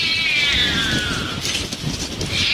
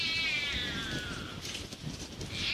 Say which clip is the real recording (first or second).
second